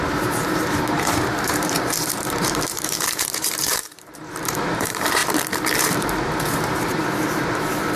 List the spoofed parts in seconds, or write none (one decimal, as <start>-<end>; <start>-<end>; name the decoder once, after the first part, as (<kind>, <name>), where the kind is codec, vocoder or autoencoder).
0.0-5.2 (vocoder, BigVGAN v2); 5.8-8.0